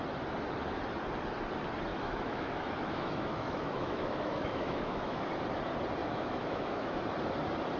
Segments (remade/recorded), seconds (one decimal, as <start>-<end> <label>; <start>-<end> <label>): 0.0-1.9 recorded; 1.9-5.3 remade; 5.3-6.0 recorded; 6.0-7.0 remade; 7.0-7.8 recorded